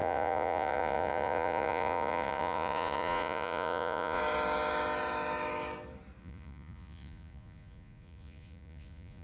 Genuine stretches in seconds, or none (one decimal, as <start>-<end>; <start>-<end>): 4.2-6.2